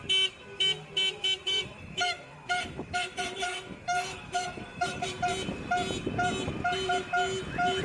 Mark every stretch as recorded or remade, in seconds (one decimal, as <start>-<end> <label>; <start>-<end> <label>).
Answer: 0.0-1.4 recorded; 1.4-5.1 remade; 5.1-7.8 recorded